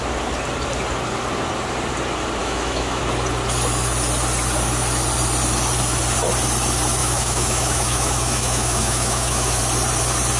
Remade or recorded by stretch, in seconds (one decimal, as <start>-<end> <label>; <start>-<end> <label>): 0.0-2.4 recorded; 2.4-3.0 remade; 3.0-7.0 recorded; 7.0-9.6 remade; 9.6-10.4 recorded